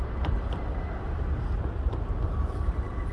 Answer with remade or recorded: remade